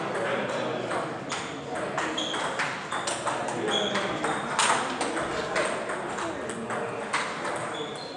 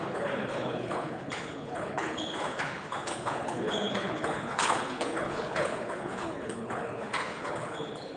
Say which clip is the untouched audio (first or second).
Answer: first